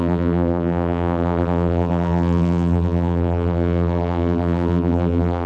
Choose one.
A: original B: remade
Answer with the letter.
B